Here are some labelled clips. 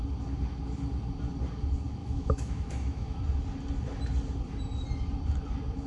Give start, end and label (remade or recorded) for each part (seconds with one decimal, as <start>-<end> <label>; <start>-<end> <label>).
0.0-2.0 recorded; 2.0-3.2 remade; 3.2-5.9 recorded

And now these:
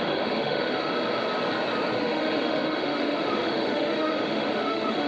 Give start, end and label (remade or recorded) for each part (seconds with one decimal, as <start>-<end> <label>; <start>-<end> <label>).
0.0-0.9 remade; 0.9-2.0 recorded; 2.0-5.1 remade

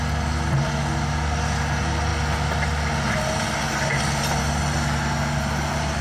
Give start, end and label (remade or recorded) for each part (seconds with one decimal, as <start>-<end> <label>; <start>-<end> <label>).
0.0-6.0 recorded